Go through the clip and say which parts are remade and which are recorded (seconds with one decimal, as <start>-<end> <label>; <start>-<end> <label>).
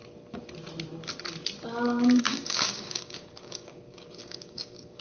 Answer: 0.0-2.2 recorded; 2.2-5.0 remade